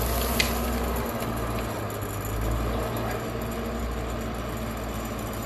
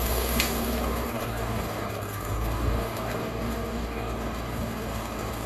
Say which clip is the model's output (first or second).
second